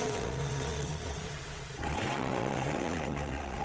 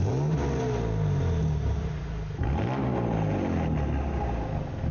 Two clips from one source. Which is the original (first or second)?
second